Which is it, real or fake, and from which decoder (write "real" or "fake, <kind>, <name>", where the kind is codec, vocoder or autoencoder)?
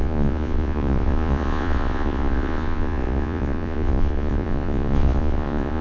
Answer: fake, vocoder, Vocos